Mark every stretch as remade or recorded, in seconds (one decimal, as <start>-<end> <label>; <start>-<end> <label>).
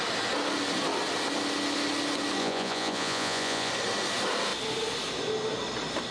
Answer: 0.0-2.4 recorded; 2.4-3.7 remade; 3.7-6.1 recorded